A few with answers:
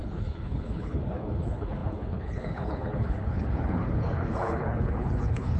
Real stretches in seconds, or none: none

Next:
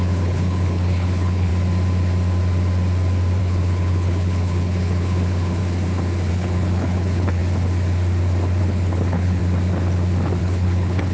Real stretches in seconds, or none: 1.5-3.4; 5.6-6.3; 7.4-8.6; 9.4-10.4